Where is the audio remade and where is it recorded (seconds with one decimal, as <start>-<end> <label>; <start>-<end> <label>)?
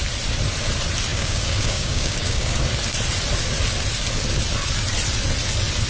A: 0.0-1.1 recorded; 1.1-2.6 remade; 2.6-5.9 recorded